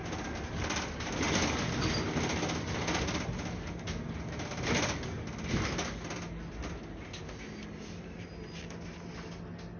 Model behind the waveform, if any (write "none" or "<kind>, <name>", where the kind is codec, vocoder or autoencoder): none